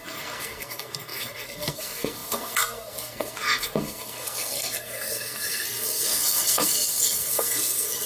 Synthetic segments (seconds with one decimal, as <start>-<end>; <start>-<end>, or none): 0.0-8.1

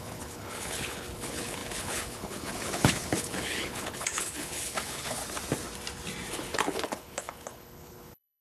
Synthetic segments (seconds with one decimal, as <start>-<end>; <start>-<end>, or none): 0.0-5.2; 6.3-8.4

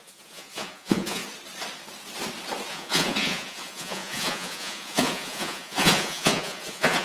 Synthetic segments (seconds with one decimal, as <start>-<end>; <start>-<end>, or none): 0.0-1.2; 2.7-7.0

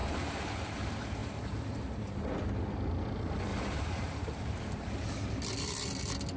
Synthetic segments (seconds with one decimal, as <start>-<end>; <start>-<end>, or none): 0.0-0.5; 1.2-2.3; 3.5-4.5

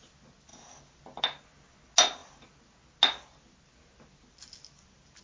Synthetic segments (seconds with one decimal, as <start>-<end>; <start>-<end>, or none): none